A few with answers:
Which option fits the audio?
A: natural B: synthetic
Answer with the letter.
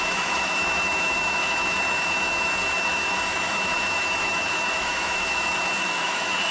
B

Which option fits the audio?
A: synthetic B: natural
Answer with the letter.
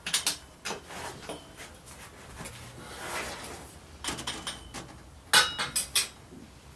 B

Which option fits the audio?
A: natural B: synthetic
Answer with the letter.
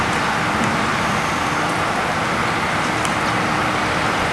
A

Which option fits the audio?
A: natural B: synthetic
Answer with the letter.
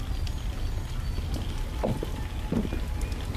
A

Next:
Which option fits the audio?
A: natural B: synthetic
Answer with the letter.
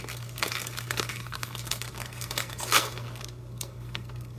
B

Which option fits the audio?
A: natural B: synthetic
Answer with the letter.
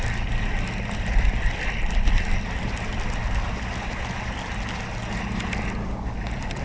A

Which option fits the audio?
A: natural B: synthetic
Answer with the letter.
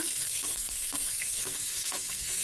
B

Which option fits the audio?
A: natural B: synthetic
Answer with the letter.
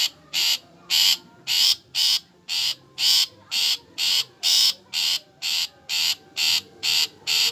B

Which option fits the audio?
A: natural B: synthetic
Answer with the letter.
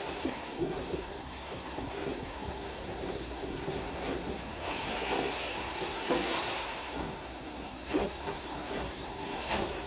B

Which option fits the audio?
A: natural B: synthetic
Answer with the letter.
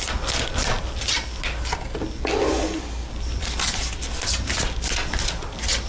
A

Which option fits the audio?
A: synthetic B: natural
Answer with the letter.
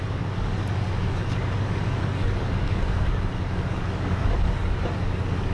A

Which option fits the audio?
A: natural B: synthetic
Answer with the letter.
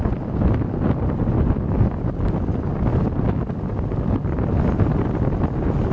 A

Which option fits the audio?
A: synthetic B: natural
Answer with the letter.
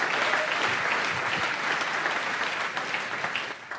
B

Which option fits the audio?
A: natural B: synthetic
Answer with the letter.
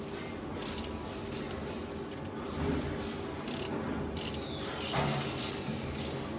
A